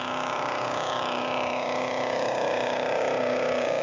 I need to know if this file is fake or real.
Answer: fake